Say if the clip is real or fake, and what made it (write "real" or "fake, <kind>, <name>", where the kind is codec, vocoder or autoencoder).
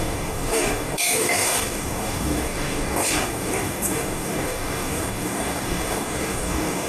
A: fake, codec, DAC